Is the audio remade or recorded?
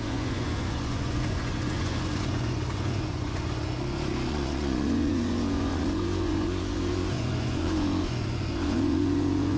remade